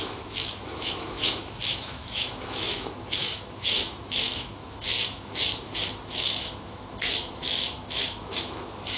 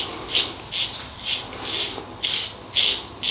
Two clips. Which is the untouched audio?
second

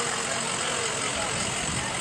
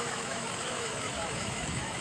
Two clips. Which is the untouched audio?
first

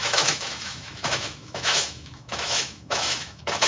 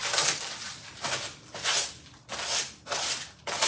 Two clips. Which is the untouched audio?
second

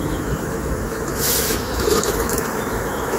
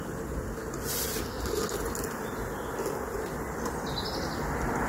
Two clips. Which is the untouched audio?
second